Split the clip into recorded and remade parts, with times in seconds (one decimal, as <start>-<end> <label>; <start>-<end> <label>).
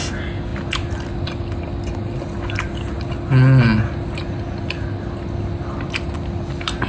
0.0-6.9 recorded